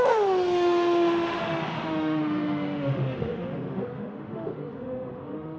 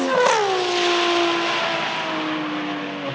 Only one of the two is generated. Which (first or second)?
first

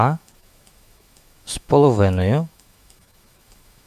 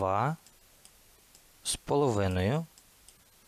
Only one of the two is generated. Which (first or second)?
first